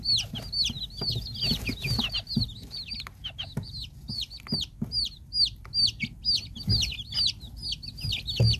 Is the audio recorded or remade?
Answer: recorded